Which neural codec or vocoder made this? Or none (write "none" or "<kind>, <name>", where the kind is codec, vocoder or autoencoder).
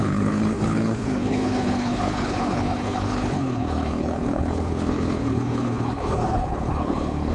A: codec, HILCodec